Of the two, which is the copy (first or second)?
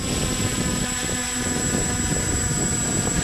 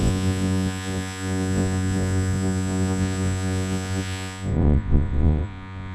second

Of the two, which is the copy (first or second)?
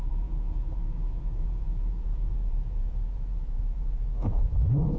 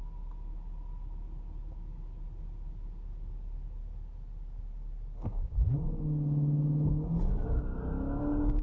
first